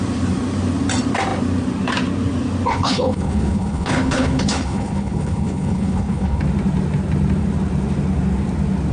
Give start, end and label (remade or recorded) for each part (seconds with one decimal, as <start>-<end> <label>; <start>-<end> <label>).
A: 0.0-2.7 recorded; 2.7-6.4 remade; 6.4-8.9 recorded